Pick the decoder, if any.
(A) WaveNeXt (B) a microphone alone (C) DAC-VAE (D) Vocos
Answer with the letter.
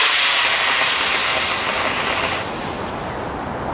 B